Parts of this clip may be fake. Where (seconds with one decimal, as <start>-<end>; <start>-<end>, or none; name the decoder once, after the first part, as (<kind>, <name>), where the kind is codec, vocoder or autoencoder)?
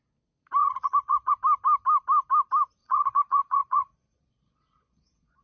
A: 0.6-1.3 (vocoder, Vocos); 2.8-5.4